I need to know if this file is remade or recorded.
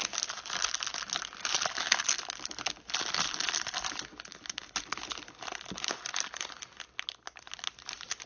recorded